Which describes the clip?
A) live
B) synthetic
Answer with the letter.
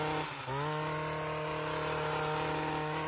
A